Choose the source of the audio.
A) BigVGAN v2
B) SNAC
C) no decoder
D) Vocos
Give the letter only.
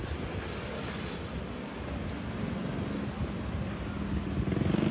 C